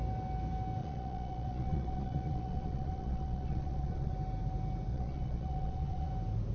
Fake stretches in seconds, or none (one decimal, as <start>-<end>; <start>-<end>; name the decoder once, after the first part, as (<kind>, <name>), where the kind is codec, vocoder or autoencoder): 0.8-4.1 (vocoder, Vocos); 4.9-6.1